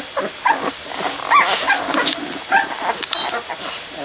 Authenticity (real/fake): real